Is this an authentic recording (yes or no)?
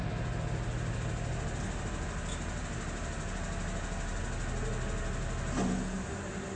yes